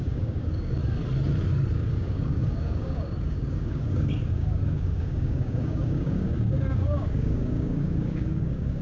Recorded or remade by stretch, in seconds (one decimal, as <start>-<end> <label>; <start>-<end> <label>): 0.0-0.8 remade; 0.8-1.7 recorded; 1.7-8.8 remade